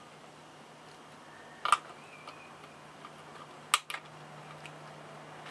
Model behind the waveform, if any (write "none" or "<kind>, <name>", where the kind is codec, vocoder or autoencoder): none